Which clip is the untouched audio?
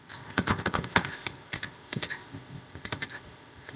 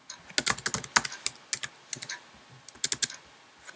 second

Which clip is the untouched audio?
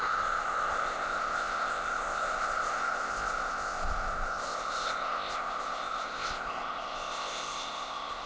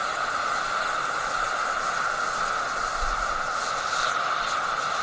second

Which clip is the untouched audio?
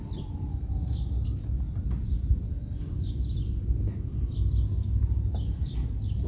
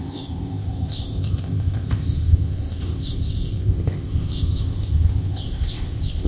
first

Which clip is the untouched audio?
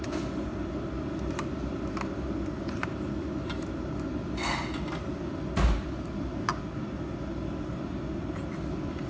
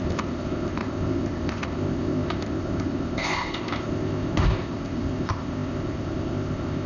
first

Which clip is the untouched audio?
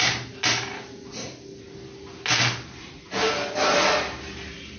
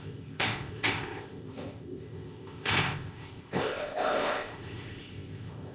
first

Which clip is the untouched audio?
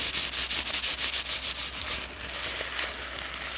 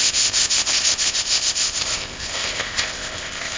first